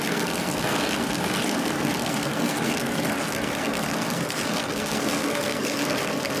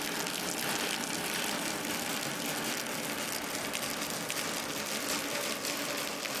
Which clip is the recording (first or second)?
second